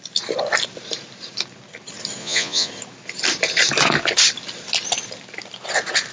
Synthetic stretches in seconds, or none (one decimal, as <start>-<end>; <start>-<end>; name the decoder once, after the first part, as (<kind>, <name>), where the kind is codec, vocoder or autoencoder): 2.2-2.7 (vocoder, Vocos)